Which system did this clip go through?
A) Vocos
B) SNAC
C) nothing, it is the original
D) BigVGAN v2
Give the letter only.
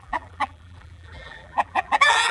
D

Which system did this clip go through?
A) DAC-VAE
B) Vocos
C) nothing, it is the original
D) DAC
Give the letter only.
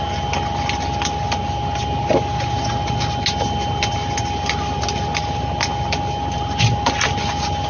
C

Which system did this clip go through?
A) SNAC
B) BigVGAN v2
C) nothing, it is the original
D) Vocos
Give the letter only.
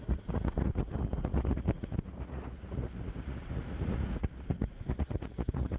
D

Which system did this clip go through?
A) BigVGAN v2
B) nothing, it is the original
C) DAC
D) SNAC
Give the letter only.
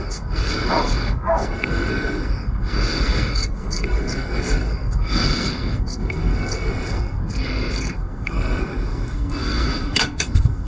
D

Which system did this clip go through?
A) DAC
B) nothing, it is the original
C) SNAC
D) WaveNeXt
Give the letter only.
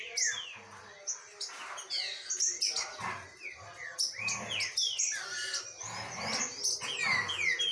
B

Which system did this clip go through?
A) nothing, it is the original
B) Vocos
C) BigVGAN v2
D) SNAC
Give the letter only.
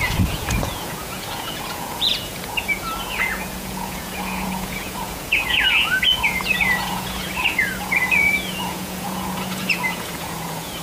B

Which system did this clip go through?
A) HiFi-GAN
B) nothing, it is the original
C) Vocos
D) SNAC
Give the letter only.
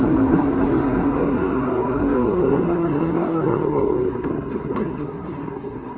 D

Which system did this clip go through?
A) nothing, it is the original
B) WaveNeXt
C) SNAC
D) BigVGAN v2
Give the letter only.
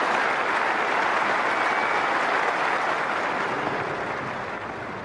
A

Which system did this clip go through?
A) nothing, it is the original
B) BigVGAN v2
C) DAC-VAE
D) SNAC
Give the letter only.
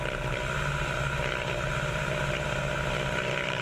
B